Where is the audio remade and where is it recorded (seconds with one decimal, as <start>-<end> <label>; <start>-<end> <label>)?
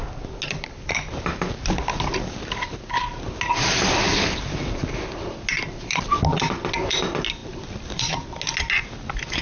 0.0-9.4 recorded